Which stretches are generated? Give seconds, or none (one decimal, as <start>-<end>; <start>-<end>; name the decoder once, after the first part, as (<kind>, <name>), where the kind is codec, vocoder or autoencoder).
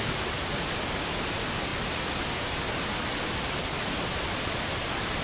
none